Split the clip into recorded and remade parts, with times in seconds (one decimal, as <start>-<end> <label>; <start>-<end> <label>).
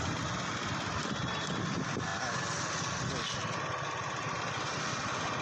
0.0-5.4 recorded